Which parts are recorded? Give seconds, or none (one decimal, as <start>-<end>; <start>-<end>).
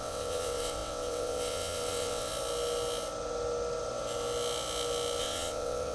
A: 2.3-5.2